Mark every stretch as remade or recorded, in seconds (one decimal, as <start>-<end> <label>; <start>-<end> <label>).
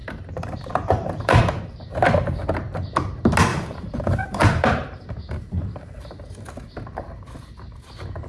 0.0-1.4 remade; 1.4-3.5 recorded; 3.5-7.9 remade; 7.9-8.3 recorded